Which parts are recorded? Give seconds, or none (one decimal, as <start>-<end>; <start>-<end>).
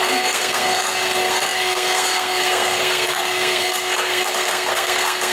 none